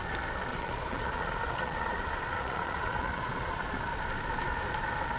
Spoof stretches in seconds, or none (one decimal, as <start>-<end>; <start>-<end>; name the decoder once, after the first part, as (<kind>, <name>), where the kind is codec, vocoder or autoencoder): 0.5-3.6 (vocoder, Vocos)